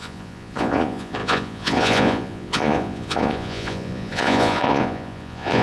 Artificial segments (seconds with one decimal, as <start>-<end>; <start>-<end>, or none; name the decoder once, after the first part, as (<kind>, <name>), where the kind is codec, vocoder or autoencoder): 0.0-5.6 (vocoder, Vocos)